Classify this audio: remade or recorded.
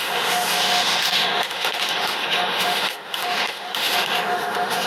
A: remade